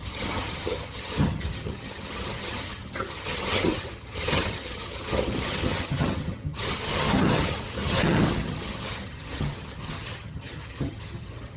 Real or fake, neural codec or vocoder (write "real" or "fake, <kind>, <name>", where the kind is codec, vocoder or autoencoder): fake, vocoder, HiFi-GAN